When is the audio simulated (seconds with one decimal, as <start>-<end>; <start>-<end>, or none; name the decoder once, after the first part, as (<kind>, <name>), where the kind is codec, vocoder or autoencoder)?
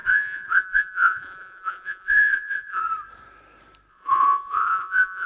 0.0-2.8 (vocoder, Vocos); 3.9-5.3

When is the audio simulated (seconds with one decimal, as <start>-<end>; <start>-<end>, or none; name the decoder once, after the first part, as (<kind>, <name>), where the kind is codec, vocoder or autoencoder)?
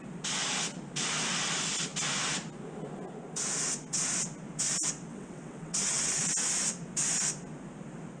5.1-6.2 (vocoder, WaveNeXt)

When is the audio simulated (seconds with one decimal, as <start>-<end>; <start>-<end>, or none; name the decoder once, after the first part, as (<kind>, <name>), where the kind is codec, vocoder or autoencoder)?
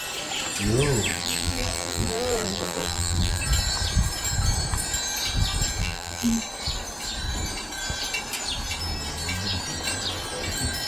1.1-3.4 (vocoder, BigVGAN v2); 5.8-6.4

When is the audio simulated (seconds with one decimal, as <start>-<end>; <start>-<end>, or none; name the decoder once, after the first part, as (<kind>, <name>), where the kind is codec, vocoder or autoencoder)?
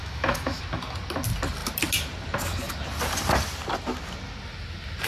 0.0-0.6 (autoencoder, DAC-VAE)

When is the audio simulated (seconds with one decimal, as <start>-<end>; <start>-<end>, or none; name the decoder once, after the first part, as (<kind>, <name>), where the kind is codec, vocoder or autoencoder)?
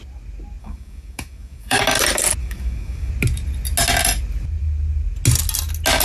0.6-1.8 (codec, DAC); 2.4-3.1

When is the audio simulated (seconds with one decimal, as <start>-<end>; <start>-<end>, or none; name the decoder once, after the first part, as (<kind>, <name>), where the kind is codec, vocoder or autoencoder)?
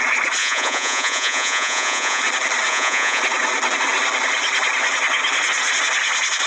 0.4-2.2 (vocoder, Vocos); 2.7-3.2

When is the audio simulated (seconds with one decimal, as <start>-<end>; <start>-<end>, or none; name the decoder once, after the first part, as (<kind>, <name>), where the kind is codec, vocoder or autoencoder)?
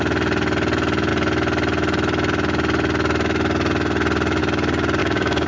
5.0-5.5 (codec, DAC)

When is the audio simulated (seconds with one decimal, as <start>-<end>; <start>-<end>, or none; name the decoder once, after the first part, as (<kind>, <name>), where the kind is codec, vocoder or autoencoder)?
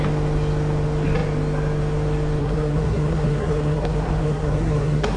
2.4-5.2 (codec, SNAC)